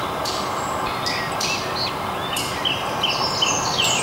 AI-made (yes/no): no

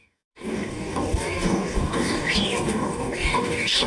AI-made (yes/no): yes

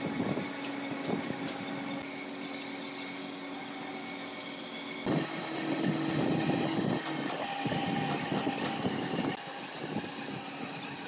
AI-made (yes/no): no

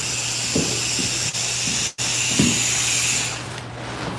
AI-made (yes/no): no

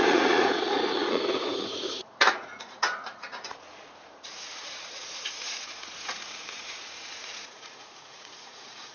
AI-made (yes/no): yes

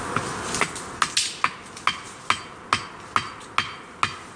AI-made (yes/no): no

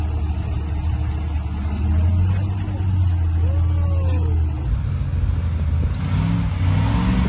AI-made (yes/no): no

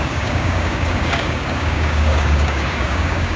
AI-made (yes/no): yes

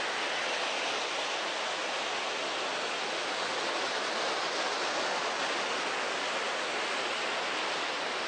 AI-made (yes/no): no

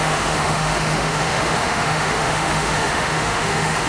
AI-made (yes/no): yes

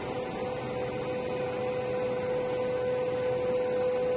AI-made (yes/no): no